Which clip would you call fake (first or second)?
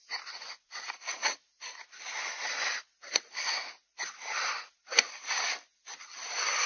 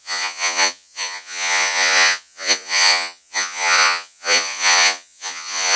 second